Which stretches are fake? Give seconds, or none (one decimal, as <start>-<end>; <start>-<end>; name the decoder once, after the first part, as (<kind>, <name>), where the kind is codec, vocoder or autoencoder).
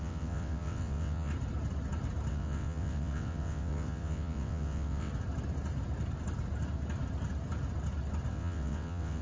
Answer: 0.0-1.3 (vocoder, WaveNeXt); 2.3-5.1; 8.3-9.2